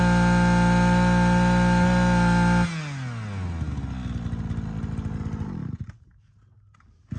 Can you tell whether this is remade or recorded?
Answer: recorded